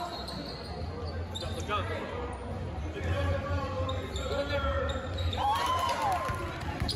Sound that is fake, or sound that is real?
real